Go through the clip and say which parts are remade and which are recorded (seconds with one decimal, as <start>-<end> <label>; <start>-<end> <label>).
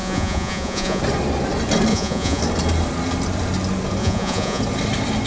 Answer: 0.0-1.0 remade; 1.0-1.9 recorded; 1.9-2.4 remade; 2.4-4.0 recorded; 4.0-4.6 remade; 4.6-5.3 recorded